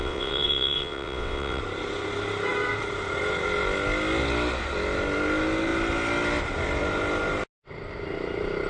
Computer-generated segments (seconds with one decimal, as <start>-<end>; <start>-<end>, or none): 0.0-1.6